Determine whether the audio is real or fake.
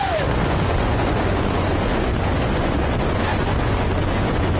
fake